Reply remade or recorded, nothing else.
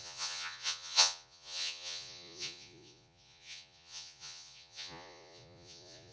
remade